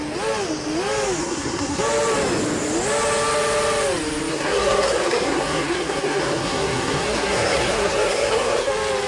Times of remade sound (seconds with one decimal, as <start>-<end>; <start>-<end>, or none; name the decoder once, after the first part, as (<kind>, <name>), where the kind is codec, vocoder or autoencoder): 1.2-1.8 (codec, SNAC); 4.3-8.7